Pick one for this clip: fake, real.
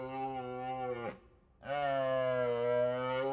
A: real